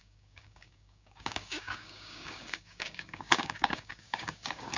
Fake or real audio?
fake